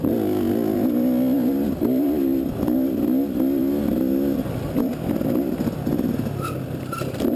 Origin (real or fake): real